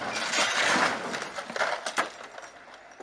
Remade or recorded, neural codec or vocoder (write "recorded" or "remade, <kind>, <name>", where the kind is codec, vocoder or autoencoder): recorded